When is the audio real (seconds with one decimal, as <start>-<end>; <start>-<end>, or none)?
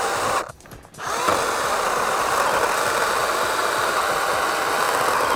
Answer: 0.0-5.4